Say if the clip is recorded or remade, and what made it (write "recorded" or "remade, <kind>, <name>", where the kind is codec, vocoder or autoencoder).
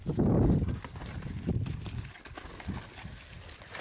recorded